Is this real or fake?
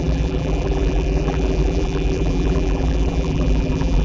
fake